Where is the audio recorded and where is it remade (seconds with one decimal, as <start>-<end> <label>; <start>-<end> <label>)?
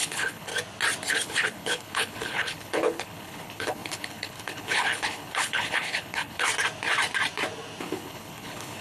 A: 0.0-0.5 remade; 0.5-1.1 recorded; 1.1-6.5 remade; 6.5-7.8 recorded; 7.8-8.8 remade